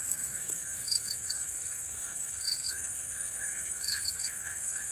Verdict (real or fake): fake